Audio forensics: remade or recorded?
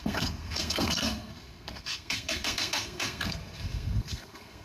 remade